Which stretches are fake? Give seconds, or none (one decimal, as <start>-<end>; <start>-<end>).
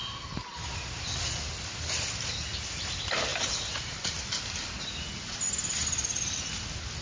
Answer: 3.3-4.8